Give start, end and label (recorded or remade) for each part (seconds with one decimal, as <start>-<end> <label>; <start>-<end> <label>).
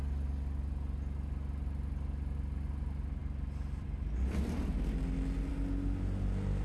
0.0-6.6 recorded